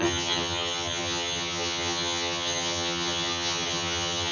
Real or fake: fake